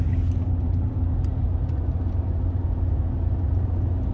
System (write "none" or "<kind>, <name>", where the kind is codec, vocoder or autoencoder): none